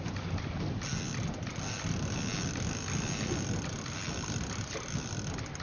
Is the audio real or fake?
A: real